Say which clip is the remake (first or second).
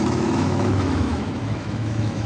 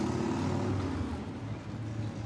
first